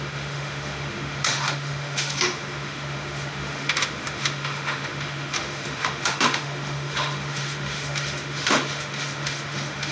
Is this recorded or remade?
remade